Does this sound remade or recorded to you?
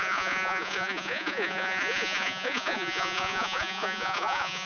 remade